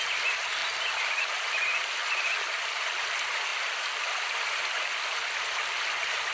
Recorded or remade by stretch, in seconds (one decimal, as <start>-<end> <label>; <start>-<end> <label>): 0.0-6.3 recorded